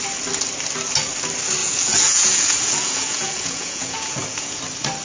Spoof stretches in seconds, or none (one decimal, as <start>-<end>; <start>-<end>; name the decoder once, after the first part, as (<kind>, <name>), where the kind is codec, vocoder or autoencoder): 1.6-4.6 (vocoder, Vocos)